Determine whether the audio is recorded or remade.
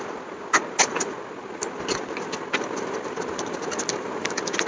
recorded